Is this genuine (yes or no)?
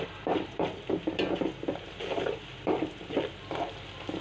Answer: yes